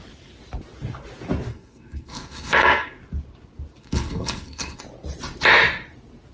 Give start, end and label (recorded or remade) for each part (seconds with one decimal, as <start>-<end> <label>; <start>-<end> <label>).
0.0-1.5 recorded; 1.5-3.0 remade; 3.0-3.8 recorded; 3.8-4.8 remade; 4.8-6.3 recorded